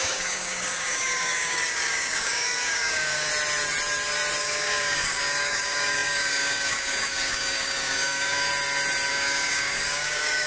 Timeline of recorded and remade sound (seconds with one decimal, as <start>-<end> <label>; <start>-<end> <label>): 0.0-3.3 remade; 3.3-4.4 recorded; 4.4-8.5 remade; 8.5-9.1 recorded; 9.1-10.5 remade